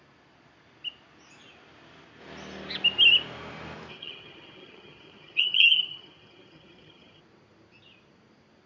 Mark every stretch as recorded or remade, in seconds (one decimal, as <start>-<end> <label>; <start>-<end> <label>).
0.0-3.9 recorded; 3.9-7.2 remade; 7.2-8.7 recorded

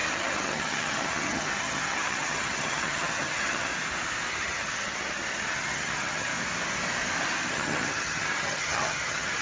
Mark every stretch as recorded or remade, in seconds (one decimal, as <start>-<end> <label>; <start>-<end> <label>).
0.0-3.7 remade; 3.7-4.3 recorded; 4.3-6.3 remade; 6.3-7.5 recorded; 7.5-9.4 remade

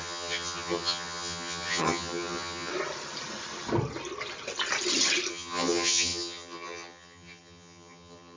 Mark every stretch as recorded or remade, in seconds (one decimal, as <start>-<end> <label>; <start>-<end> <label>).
0.0-2.7 remade; 2.7-5.3 recorded; 5.3-8.4 remade

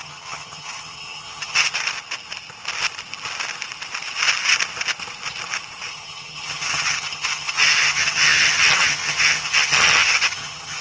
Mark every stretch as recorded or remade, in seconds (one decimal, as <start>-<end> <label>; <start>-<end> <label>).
0.0-1.7 remade; 1.7-5.9 recorded; 5.9-10.8 remade